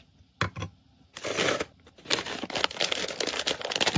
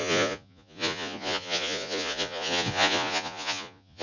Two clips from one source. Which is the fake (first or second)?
second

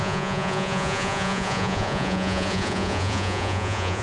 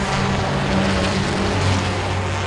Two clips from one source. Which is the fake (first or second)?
first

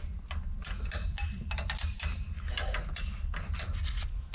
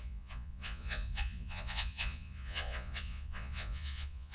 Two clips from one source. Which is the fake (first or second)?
second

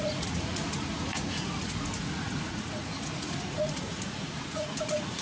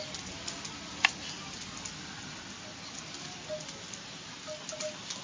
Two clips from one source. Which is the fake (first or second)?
first